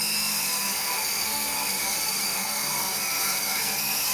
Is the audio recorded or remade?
remade